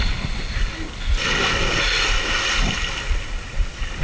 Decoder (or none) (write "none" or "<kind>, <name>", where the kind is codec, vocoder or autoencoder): none